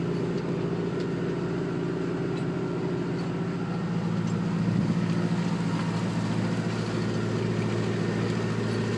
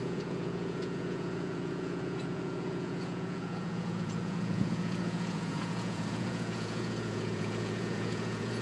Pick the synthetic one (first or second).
second